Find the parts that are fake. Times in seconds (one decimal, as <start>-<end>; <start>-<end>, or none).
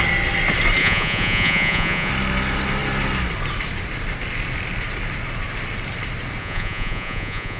0.8-2.1; 6.4-7.6